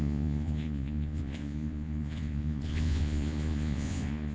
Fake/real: fake